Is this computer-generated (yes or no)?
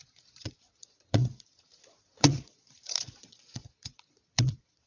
yes